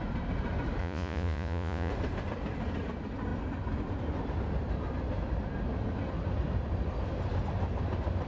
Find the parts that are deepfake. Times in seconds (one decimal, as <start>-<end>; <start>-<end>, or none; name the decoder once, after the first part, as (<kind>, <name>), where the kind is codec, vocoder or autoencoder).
0.8-1.9 (vocoder, Vocos)